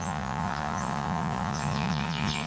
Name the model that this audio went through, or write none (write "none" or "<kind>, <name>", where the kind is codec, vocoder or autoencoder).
vocoder, Vocos